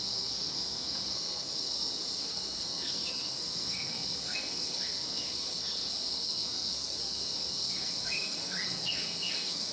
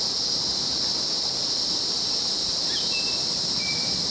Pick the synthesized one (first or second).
first